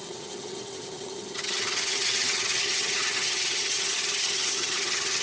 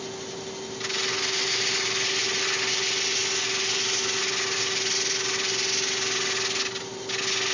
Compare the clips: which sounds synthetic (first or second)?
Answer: first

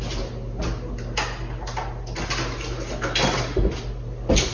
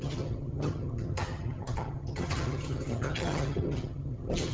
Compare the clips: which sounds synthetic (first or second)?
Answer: second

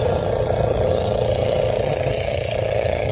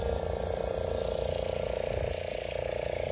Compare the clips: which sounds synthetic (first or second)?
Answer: first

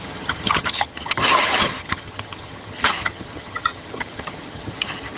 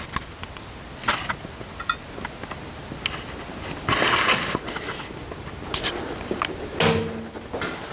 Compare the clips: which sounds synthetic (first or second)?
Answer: first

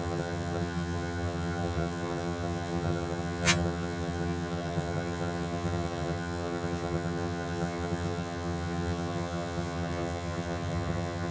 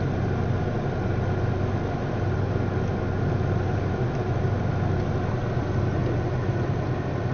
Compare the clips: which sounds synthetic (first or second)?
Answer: first